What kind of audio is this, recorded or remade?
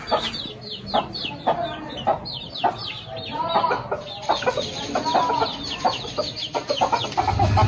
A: recorded